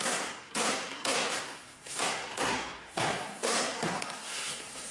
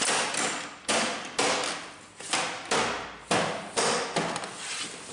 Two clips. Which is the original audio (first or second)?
second